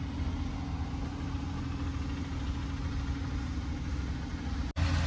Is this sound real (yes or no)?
yes